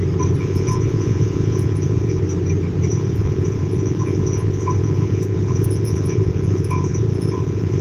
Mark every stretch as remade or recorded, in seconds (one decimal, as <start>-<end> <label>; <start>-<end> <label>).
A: 0.0-0.4 recorded; 0.4-2.2 remade; 2.2-2.9 recorded; 2.9-7.8 remade